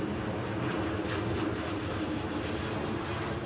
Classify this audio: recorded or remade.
recorded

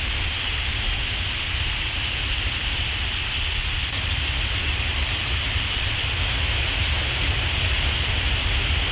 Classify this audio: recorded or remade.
recorded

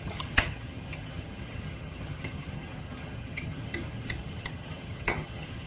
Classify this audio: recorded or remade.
remade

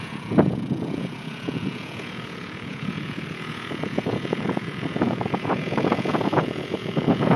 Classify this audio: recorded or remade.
remade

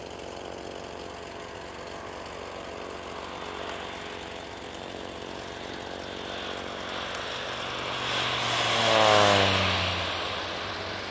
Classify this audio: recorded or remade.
recorded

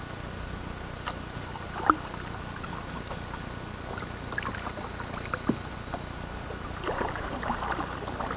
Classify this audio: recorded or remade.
recorded